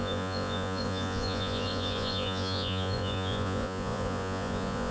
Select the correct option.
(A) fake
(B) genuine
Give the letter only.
A